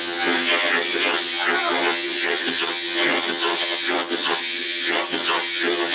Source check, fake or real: fake